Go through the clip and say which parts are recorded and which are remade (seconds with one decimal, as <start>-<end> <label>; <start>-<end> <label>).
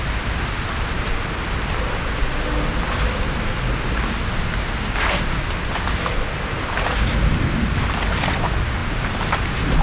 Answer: 0.0-9.8 recorded